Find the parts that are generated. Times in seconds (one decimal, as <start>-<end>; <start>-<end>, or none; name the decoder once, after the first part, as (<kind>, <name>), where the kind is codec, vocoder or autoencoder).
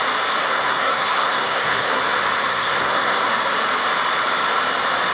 0.4-2.0 (codec, SNAC); 2.5-3.3